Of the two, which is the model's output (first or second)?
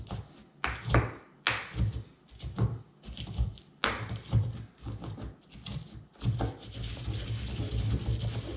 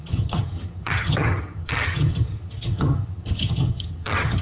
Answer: second